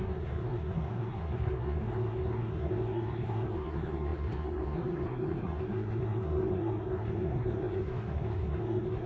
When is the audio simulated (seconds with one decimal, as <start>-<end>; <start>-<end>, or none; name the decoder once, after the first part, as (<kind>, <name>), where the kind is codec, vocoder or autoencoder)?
0.0-9.1 (codec, SNAC)